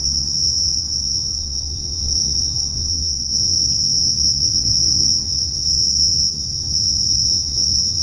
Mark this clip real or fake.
fake